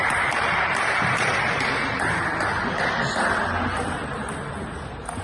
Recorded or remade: remade